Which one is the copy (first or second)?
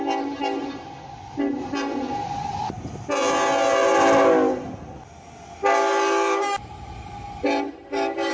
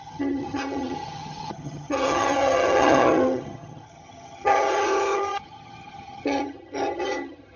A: second